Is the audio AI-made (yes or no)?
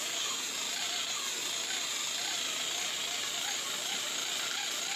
no